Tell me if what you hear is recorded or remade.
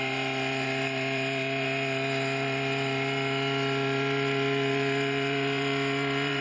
remade